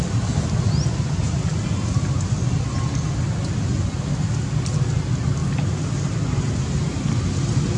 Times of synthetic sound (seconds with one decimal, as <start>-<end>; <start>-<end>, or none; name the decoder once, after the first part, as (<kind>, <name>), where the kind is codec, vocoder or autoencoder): none